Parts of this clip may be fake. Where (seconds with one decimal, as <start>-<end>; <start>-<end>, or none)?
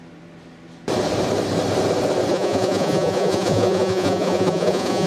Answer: 2.3-5.1